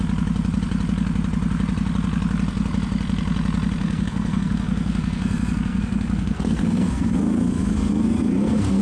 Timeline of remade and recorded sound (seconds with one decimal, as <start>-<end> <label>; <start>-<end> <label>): 0.0-3.8 recorded; 3.8-8.8 remade